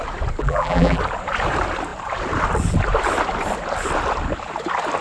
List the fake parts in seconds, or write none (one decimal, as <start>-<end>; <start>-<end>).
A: 0.4-1.0